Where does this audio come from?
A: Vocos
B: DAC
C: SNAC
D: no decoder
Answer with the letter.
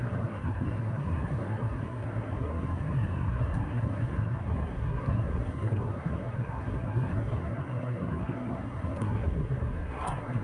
C